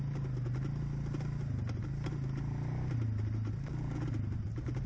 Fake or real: real